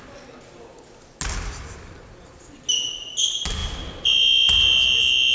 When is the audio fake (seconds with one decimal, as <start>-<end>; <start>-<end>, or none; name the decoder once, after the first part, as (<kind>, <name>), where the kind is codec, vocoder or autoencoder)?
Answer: none